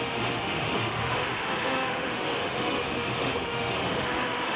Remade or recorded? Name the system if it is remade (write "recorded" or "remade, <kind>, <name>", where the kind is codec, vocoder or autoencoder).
remade, autoencoder, DAC-VAE